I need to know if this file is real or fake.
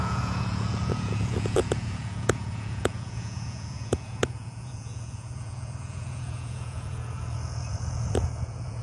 fake